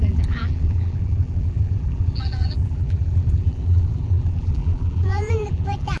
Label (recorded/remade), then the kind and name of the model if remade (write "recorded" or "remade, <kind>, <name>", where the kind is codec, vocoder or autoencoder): remade, vocoder, BigVGAN v2